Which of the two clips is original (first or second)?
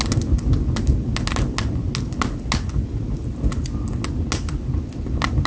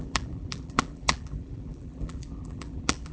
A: first